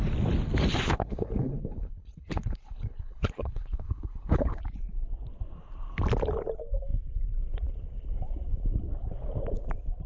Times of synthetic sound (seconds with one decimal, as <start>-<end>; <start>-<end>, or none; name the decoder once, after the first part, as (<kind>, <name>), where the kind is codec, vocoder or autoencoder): 0.7-4.6 (codec, HILCodec)